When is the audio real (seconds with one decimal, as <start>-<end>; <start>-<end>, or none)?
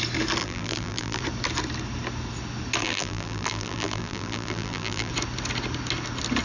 0.0-0.4; 1.2-2.8; 5.1-6.4